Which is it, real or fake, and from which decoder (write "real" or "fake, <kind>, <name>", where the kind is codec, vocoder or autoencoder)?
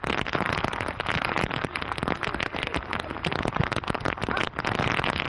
real